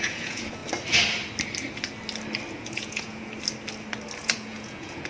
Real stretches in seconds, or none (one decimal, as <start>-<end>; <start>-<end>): 0.6-2.5; 3.3-4.2